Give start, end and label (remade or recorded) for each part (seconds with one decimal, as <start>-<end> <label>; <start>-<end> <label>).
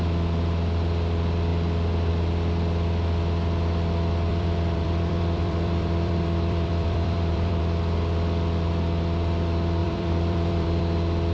0.0-4.3 recorded; 4.3-7.6 remade; 7.6-9.8 recorded; 9.8-10.8 remade; 10.8-11.3 recorded